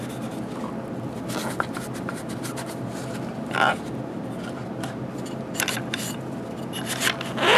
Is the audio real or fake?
real